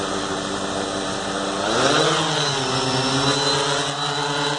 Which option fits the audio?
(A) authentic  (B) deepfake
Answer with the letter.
A